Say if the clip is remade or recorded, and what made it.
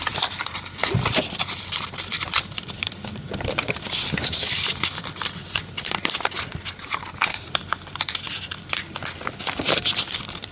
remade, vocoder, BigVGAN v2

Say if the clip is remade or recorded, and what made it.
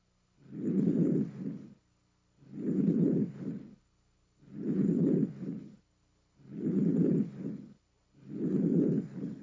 remade, codec, HILCodec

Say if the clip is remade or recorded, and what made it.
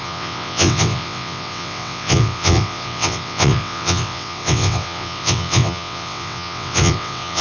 remade, vocoder, WaveNeXt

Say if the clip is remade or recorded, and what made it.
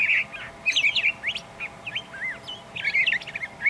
recorded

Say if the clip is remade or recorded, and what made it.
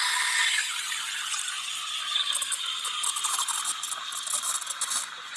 recorded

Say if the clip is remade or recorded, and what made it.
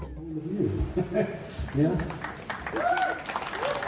recorded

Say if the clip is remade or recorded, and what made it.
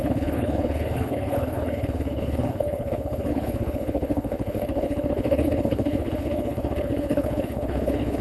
remade, codec, HILCodec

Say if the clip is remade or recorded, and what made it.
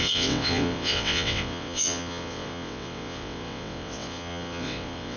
remade, vocoder, WaveNeXt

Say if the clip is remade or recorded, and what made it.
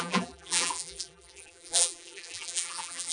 remade, vocoder, BigVGAN v2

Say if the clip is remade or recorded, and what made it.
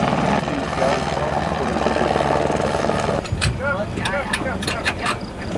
recorded